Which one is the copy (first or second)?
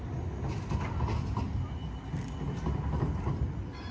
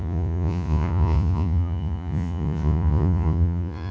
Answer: second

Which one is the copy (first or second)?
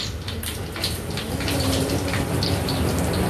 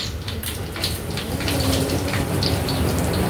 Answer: second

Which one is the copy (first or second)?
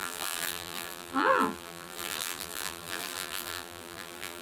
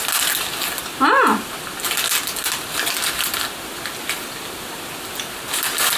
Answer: first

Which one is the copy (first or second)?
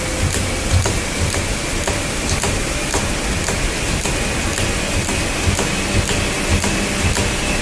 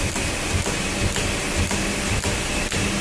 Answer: second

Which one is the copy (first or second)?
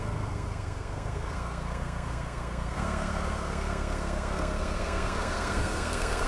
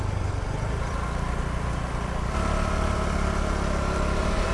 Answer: first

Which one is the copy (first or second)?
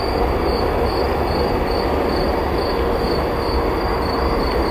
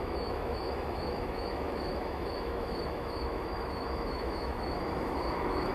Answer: second